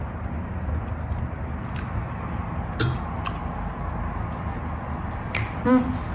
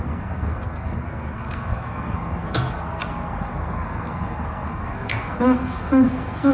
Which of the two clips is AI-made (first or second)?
second